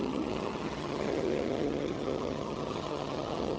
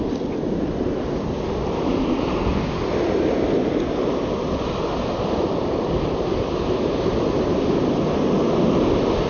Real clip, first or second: second